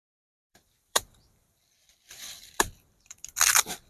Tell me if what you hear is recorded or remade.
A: remade